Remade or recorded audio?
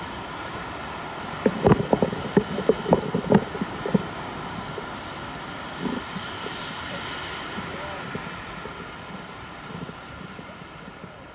remade